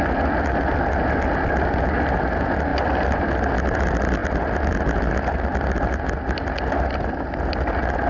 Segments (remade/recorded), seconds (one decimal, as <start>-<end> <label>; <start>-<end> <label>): 0.0-8.1 recorded